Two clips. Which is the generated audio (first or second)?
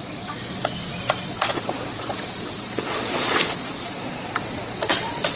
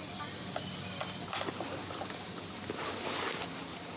first